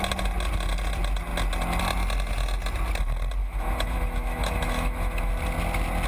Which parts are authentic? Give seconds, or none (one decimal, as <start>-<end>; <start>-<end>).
0.0-3.4; 5.3-6.1